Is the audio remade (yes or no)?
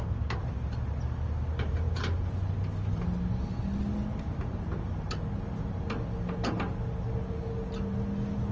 no